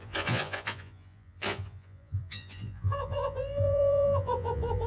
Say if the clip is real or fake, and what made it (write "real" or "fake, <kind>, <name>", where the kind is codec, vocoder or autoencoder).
fake, vocoder, Vocos